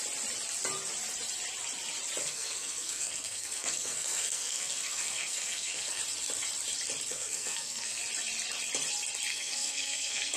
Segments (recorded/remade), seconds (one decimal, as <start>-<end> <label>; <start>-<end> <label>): 0.0-2.2 recorded; 2.2-6.0 remade; 6.0-7.1 recorded; 7.1-8.0 remade; 8.0-9.3 recorded; 9.3-10.4 remade